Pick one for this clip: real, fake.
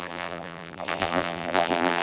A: fake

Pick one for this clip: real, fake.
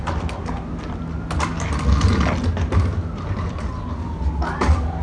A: real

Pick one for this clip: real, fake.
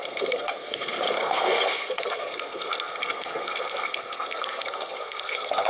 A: fake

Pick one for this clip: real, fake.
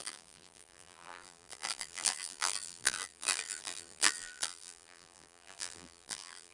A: fake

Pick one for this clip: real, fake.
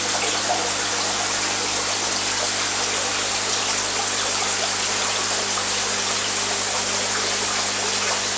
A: real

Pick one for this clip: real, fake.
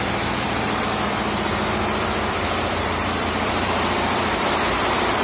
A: fake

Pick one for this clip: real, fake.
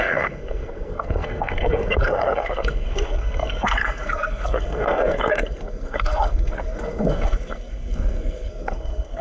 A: fake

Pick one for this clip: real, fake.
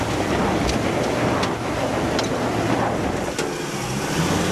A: real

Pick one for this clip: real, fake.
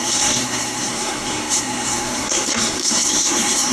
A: fake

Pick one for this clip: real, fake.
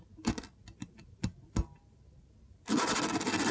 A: real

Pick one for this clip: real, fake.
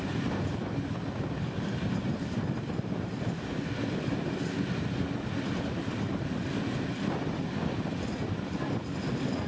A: real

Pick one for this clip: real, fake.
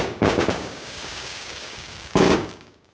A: fake